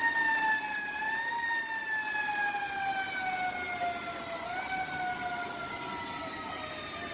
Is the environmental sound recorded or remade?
recorded